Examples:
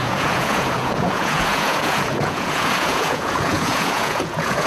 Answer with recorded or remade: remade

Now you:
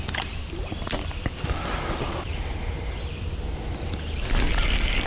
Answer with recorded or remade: recorded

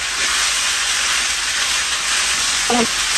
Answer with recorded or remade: remade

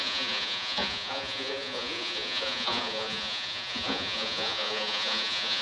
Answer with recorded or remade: remade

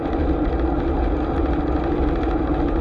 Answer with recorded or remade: recorded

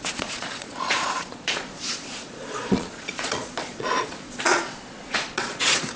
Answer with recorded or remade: remade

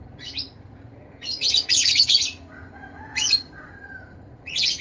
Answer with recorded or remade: remade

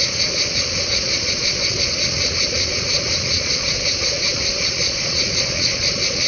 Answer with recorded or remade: remade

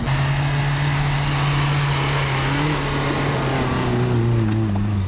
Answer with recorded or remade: recorded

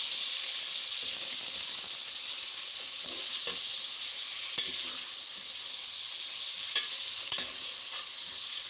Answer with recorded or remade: recorded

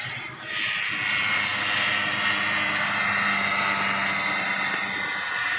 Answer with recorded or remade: recorded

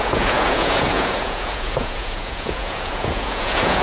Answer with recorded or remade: remade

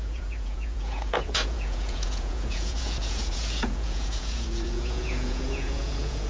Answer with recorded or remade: remade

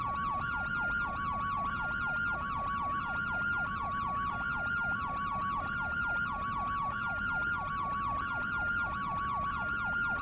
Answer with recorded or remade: recorded